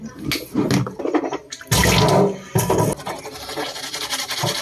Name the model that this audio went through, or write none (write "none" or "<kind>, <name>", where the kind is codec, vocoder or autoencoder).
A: none